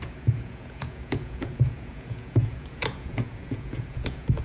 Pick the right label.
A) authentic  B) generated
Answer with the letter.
B